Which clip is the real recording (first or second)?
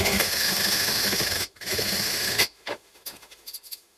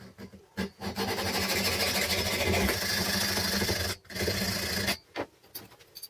second